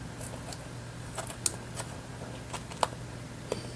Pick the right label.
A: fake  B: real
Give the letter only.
B